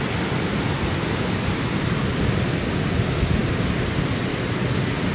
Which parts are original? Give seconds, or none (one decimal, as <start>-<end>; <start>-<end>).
0.0-5.1